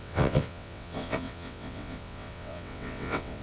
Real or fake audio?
fake